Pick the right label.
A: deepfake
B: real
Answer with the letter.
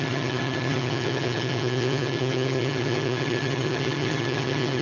A